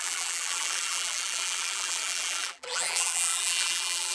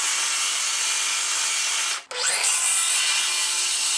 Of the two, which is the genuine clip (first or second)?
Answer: second